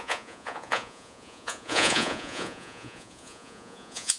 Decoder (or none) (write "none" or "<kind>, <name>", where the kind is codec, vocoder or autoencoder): vocoder, Vocos